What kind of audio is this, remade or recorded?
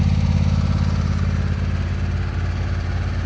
recorded